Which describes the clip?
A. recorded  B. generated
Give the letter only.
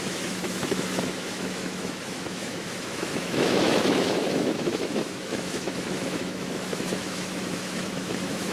B